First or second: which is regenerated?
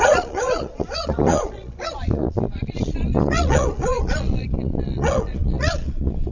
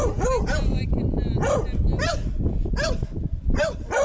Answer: first